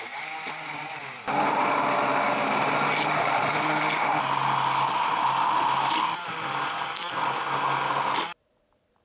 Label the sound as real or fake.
real